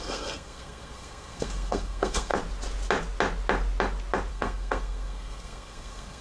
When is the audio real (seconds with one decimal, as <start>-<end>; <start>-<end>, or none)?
2.3-4.3